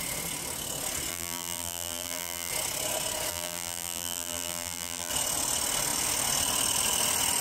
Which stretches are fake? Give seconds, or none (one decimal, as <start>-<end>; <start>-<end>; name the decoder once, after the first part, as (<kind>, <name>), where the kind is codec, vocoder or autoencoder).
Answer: 1.1-2.5 (vocoder, BigVGAN v2); 3.3-5.1

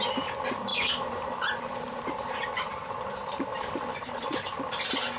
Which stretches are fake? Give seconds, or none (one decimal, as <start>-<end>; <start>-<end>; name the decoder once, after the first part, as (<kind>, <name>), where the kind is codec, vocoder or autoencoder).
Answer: 0.7-3.1 (vocoder, BigVGAN v2); 3.5-4.6

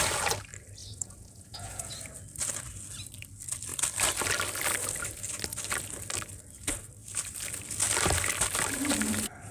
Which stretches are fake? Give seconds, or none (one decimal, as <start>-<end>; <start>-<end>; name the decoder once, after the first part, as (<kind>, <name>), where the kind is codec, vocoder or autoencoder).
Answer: 0.8-1.9 (vocoder, Vocos)

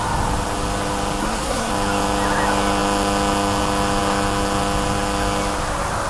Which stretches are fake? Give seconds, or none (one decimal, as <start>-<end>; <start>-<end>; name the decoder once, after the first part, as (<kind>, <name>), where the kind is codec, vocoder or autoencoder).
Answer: 1.2-1.7 (codec, SNAC)